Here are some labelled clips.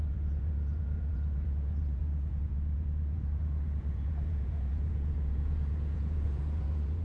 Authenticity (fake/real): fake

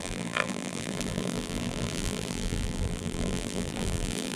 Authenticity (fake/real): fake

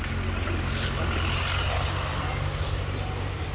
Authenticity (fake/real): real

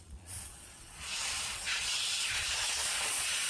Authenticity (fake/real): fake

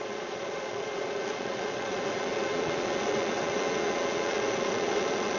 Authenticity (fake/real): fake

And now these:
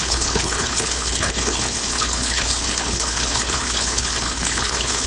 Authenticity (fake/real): fake